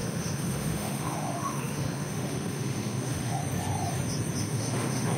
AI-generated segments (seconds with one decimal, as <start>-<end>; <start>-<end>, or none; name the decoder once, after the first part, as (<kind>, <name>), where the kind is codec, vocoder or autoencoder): 0.0-3.4 (autoencoder, DAC-VAE); 4.4-5.2